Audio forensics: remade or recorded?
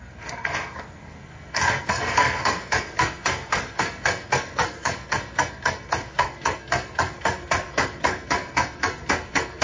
remade